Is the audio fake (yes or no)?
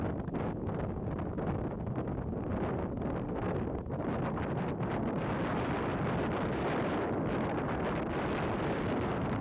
no